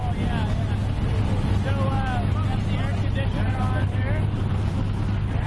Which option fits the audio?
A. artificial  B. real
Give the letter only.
B